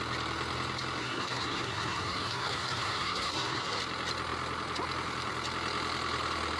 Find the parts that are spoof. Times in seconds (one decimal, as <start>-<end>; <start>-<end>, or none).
1.0-3.8